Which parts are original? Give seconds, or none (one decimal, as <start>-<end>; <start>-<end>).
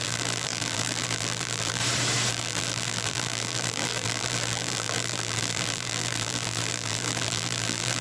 1.8-2.3